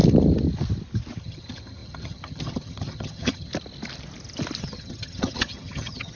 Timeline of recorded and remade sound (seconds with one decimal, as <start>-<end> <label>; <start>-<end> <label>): 0.0-1.2 recorded; 1.2-3.5 remade; 3.5-4.6 recorded; 4.6-6.2 remade